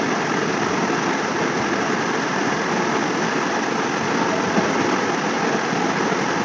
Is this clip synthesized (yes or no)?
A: no